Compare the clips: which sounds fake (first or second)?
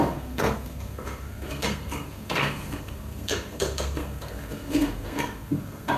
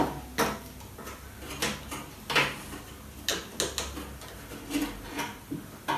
first